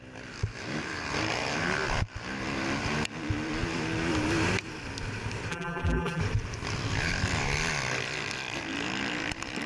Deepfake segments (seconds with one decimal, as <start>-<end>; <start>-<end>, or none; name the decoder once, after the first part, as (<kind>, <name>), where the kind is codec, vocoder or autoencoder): 5.5-6.2 (vocoder, BigVGAN v2)